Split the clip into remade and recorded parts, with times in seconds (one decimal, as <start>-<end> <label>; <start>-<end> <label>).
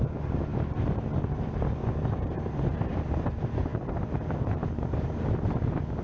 0.0-6.0 recorded